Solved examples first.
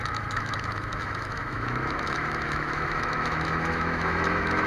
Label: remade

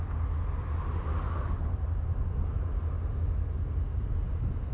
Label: recorded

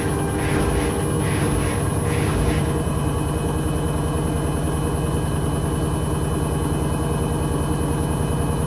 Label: recorded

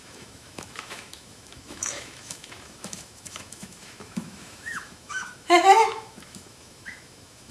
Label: remade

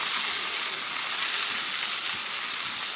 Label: recorded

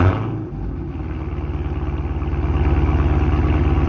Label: recorded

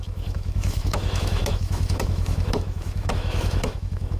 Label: remade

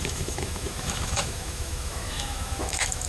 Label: remade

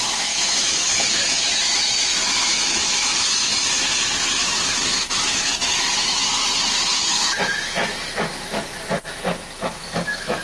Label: remade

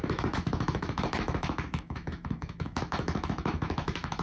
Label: remade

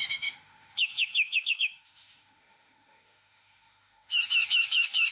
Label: remade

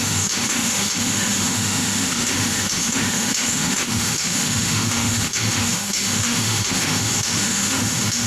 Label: remade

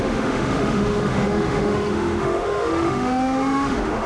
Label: remade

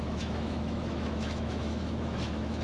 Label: remade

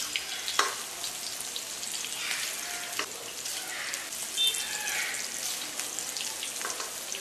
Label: recorded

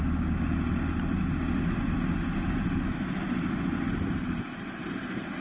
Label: recorded